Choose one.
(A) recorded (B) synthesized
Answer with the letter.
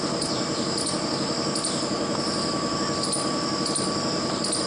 A